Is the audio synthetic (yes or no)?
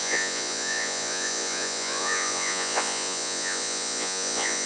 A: yes